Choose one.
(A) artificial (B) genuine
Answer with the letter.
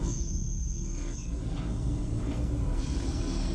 A